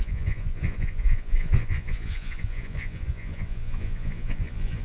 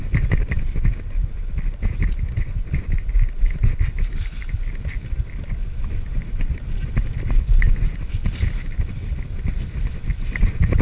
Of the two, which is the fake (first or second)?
first